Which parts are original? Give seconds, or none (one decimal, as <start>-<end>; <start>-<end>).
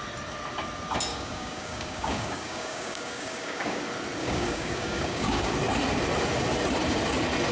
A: 0.0-1.1; 3.8-4.2; 5.5-7.5